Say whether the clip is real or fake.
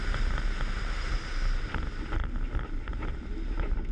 real